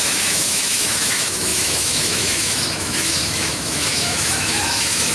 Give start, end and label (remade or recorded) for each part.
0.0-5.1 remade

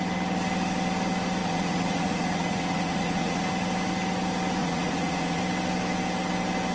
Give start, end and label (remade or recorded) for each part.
0.0-1.4 recorded; 1.4-3.5 remade; 3.5-4.6 recorded; 4.6-5.4 remade; 5.4-6.7 recorded

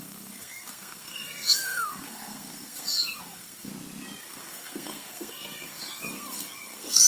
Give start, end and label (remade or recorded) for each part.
0.0-3.7 remade; 3.7-4.2 recorded; 4.2-7.1 remade

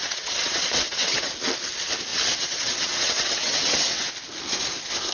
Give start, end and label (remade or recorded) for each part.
0.0-1.3 remade; 1.3-2.1 recorded; 2.1-4.1 remade; 4.1-5.1 recorded

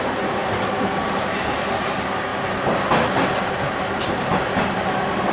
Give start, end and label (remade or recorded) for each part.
0.0-5.3 recorded

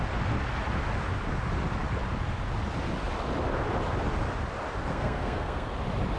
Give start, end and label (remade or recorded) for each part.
0.0-4.9 recorded; 4.9-5.7 remade; 5.7-6.2 recorded

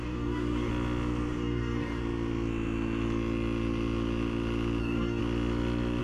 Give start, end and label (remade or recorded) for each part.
0.0-0.7 remade; 0.7-1.3 recorded; 1.3-2.0 remade; 2.0-4.8 recorded; 4.8-5.2 remade; 5.2-6.0 recorded